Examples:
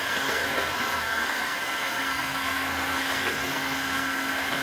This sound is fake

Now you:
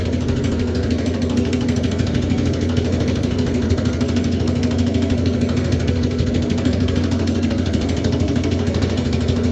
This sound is fake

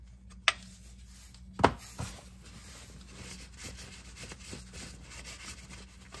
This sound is real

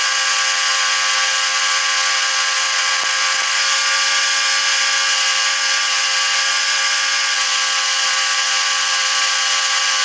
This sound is real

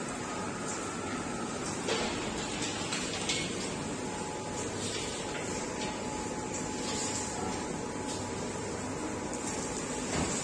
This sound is real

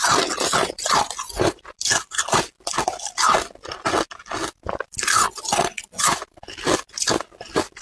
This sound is real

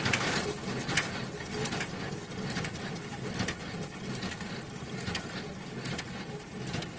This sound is real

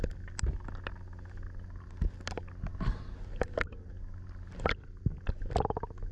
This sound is real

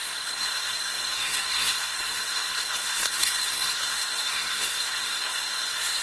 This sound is fake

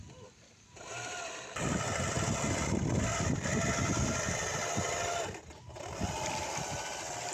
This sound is real